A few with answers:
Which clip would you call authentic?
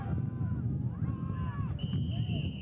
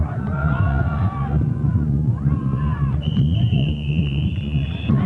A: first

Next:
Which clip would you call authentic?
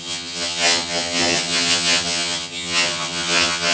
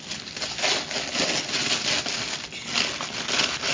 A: second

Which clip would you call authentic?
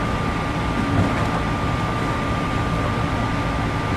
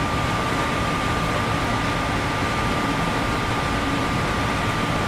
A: first